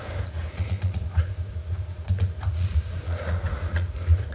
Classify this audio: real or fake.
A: fake